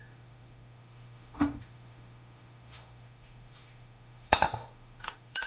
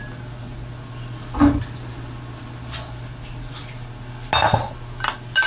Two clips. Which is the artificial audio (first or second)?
first